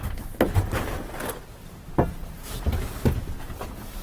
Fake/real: real